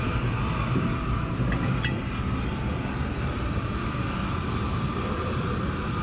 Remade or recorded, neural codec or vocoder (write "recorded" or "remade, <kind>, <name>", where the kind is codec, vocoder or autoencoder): recorded